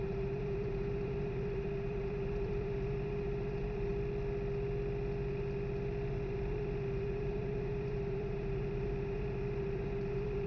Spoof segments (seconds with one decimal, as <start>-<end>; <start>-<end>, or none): 0.0-3.9; 6.1-10.5